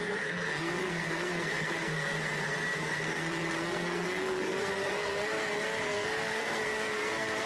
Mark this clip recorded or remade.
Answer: remade